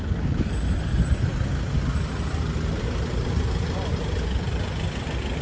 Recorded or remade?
recorded